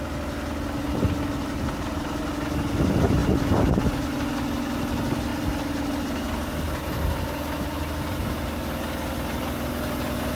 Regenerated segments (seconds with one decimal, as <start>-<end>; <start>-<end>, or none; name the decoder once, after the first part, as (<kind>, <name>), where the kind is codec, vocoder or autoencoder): none